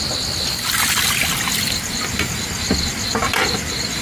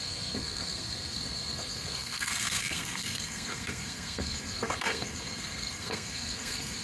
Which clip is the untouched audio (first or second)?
first